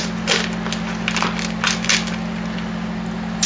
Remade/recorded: recorded